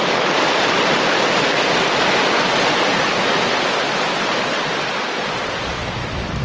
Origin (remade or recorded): recorded